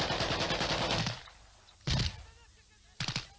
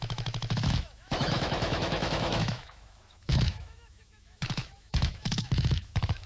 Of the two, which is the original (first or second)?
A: first